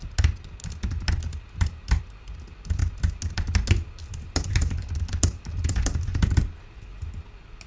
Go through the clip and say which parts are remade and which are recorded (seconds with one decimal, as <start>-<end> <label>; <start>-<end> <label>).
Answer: 0.0-7.7 recorded